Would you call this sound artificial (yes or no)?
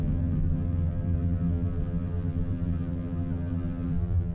yes